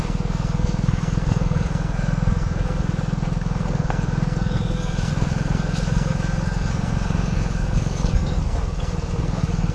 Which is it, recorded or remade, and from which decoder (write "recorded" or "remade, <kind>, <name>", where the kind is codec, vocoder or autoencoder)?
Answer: remade, codec, SNAC